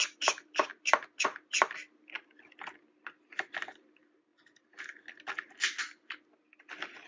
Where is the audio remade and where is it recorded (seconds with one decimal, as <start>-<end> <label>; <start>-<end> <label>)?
0.0-7.1 recorded